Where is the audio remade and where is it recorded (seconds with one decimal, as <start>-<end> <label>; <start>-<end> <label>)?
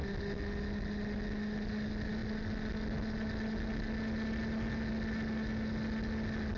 0.0-6.6 recorded